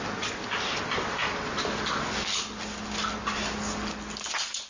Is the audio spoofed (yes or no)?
no